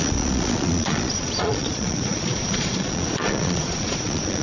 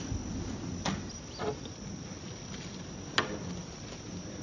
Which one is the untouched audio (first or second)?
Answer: second